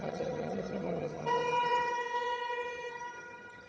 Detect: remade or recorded remade